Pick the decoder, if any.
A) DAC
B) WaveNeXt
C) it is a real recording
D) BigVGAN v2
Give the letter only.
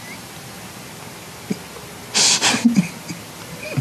C